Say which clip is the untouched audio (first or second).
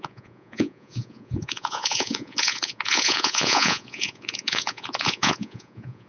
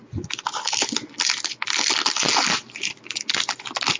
second